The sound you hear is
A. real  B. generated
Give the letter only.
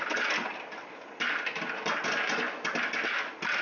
A